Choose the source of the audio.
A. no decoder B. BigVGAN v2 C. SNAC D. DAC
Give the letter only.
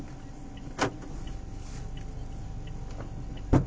A